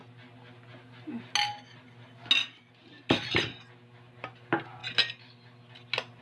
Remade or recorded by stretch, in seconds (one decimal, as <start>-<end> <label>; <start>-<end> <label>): 0.0-6.2 recorded